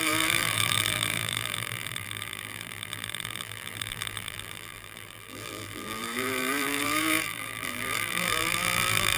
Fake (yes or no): yes